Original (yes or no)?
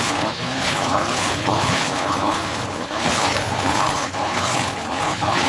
no